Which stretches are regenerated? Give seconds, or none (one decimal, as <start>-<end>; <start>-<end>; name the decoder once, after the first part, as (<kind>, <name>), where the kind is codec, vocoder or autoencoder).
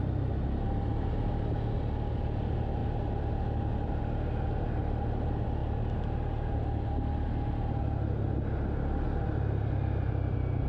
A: none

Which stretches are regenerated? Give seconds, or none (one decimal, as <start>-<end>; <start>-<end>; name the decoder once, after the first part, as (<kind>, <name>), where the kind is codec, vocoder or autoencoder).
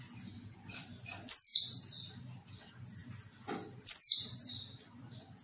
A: none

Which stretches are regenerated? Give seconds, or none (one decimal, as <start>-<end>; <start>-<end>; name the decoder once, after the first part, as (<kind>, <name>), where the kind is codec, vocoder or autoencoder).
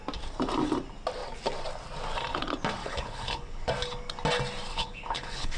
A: 2.8-3.7 (codec, HILCodec); 4.7-5.6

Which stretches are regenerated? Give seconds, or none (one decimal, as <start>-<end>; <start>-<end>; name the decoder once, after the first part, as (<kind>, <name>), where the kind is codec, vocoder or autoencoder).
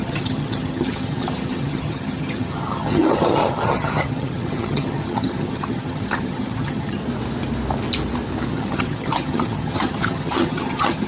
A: 0.0-7.0 (vocoder, HiFi-GAN); 8.5-11.1